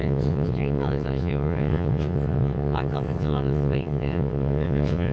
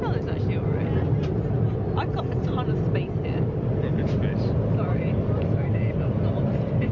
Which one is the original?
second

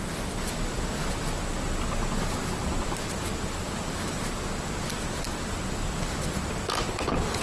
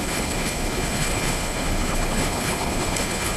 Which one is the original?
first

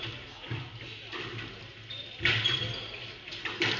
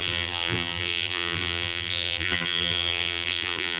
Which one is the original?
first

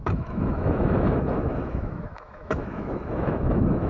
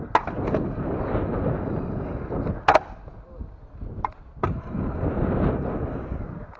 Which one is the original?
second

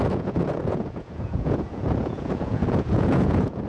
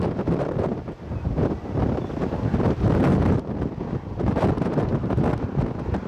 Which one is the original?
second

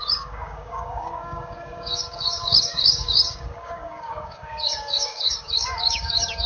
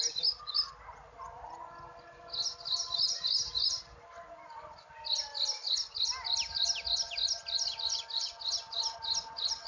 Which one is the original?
second